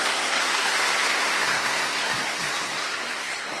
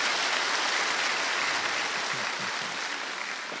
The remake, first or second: first